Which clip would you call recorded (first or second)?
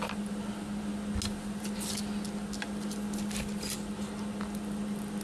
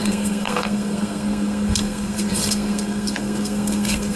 first